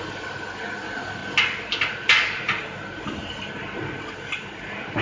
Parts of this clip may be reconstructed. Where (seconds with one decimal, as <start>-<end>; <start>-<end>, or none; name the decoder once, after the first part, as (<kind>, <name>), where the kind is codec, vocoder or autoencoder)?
none